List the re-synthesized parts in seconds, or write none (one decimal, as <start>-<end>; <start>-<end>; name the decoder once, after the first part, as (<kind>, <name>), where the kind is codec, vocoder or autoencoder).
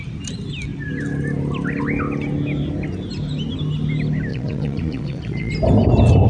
4.3-5.5 (vocoder, Vocos)